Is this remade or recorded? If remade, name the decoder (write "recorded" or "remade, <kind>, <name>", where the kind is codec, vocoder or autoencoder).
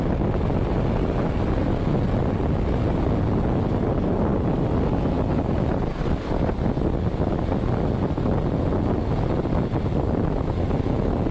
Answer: recorded